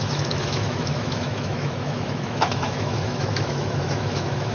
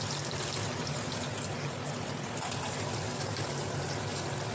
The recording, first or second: second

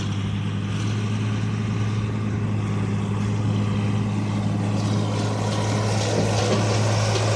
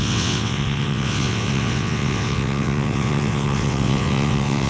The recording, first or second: first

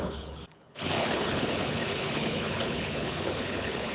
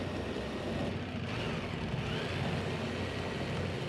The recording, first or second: second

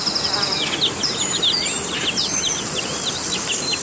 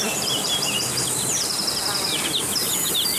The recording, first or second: first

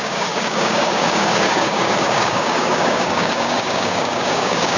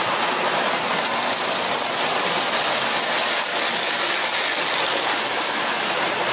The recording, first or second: second